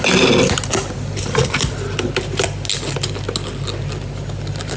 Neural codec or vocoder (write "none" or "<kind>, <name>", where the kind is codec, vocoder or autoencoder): none